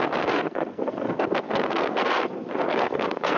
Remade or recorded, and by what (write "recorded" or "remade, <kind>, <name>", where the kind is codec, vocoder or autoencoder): remade, codec, SNAC